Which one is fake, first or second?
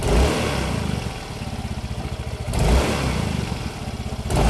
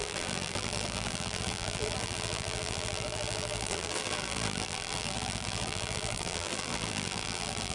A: second